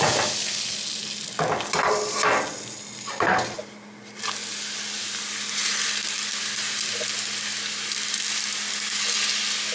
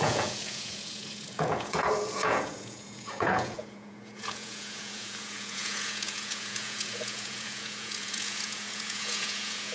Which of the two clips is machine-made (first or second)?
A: second